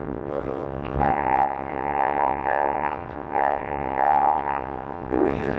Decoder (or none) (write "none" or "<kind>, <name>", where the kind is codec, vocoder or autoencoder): vocoder, WaveNeXt